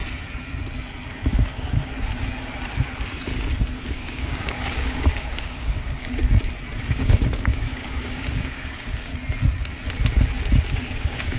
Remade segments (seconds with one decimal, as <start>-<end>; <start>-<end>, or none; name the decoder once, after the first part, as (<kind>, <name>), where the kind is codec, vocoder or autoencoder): 1.3-1.8 (codec, DAC); 3.9-6.2; 6.9-9.1; 10.7-11.4